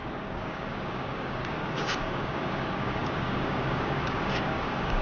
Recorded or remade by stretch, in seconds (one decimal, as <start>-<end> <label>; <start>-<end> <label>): 0.0-5.0 remade